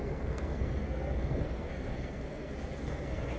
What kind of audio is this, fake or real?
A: fake